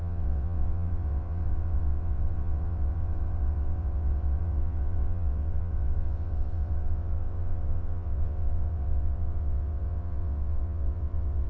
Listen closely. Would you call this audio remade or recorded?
remade